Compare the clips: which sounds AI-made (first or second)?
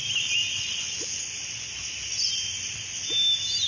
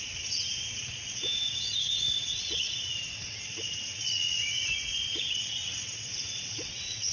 second